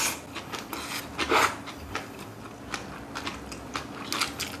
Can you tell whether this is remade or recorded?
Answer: recorded